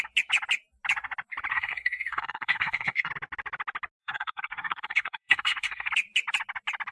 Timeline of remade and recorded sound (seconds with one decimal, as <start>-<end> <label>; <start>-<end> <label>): 0.0-1.5 recorded; 1.5-3.1 remade; 3.1-4.0 recorded; 4.0-5.9 remade; 5.9-6.9 recorded